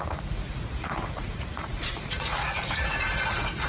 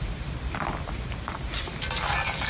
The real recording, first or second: second